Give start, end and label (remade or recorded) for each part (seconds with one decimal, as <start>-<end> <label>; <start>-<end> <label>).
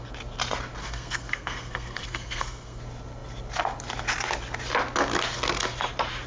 0.0-0.8 recorded; 0.8-2.8 remade; 2.8-6.3 recorded